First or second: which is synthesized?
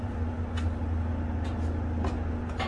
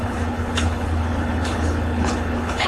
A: second